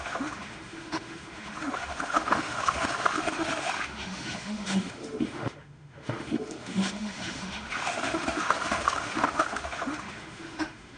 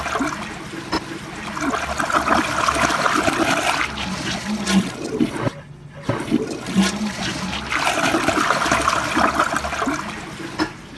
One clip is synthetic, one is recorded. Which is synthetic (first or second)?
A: first